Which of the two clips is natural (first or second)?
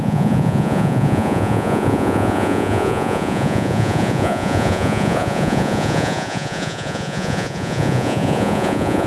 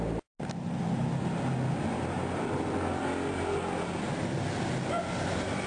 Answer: second